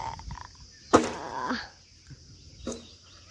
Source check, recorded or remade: remade